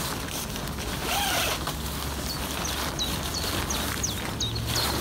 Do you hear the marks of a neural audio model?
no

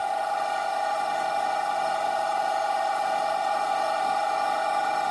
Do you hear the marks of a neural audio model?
yes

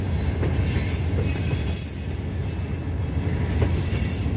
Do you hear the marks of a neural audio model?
no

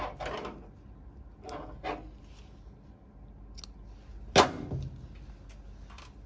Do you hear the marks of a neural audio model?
no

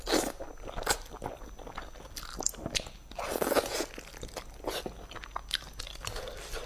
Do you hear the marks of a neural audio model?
no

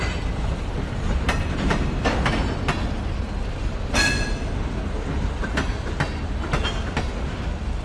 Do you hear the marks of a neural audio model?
no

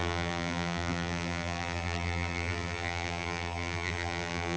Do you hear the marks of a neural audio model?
yes